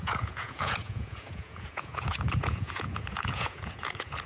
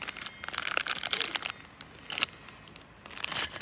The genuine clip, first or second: second